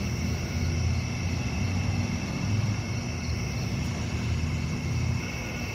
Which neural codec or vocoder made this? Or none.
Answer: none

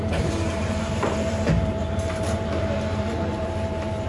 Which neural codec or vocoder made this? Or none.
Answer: vocoder, BigVGAN v2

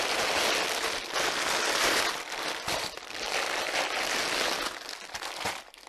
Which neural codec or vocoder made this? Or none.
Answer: none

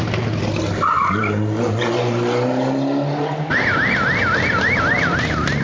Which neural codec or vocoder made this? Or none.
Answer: none